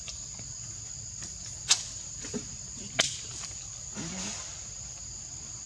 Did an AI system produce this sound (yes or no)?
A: yes